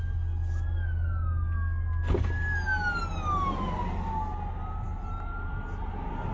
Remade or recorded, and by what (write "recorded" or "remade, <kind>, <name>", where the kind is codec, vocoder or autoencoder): recorded